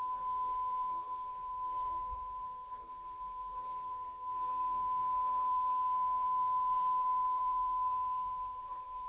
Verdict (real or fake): fake